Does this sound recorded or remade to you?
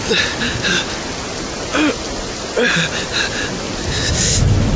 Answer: recorded